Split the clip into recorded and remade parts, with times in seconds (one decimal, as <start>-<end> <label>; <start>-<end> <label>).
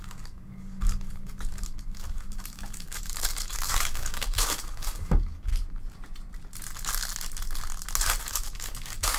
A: 0.0-5.5 remade; 5.5-8.2 recorded; 8.2-9.2 remade